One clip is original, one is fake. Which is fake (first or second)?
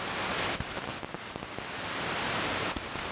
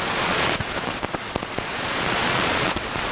second